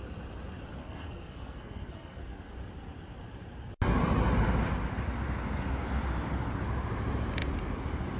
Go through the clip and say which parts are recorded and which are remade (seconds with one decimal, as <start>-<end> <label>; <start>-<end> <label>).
0.0-0.8 recorded; 0.8-2.5 remade; 2.5-8.2 recorded